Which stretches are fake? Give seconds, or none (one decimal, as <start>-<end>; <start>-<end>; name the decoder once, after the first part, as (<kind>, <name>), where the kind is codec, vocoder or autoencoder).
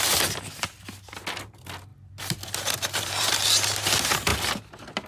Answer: 1.9-3.3 (vocoder, BigVGAN v2)